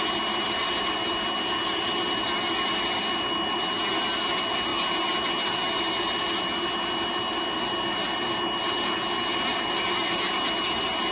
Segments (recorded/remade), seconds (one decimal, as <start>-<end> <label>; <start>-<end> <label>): 0.0-11.1 recorded